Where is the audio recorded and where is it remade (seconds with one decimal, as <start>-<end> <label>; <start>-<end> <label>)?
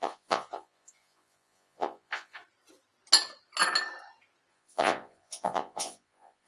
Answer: 0.0-2.4 remade; 2.4-4.5 recorded; 4.5-6.5 remade